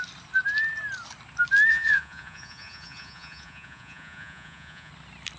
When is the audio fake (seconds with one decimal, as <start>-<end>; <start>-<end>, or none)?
1.7-4.9

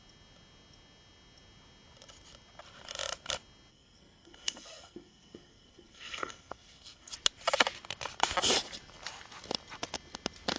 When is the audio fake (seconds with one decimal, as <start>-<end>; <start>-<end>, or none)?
3.7-7.1

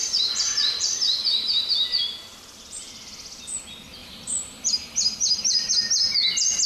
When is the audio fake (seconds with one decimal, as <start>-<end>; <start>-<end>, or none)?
0.0-2.9; 4.0-5.7

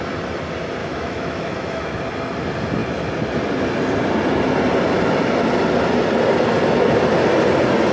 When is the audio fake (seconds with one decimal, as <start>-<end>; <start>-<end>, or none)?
0.8-2.0

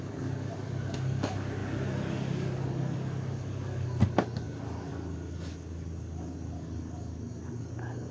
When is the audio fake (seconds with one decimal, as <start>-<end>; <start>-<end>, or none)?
0.0-8.1

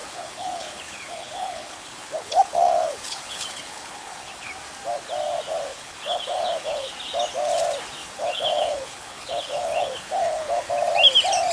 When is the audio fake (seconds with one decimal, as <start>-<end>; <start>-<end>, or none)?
0.0-4.5; 5.7-6.9; 8.0-10.7

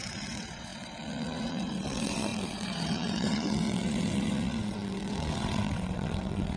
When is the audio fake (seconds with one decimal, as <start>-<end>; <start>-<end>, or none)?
0.0-6.6